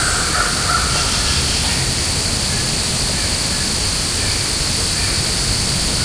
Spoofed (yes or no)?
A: no